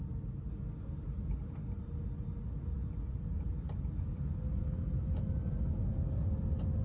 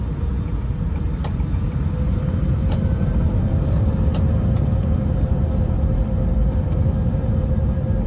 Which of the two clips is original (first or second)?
first